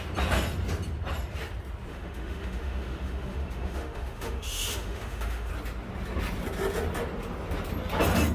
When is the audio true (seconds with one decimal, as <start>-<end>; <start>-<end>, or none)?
0.0-1.9; 5.5-8.3